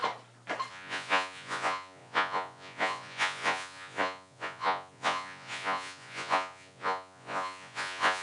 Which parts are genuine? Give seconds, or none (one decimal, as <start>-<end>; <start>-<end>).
0.0-0.7